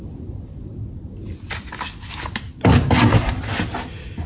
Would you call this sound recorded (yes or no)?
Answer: yes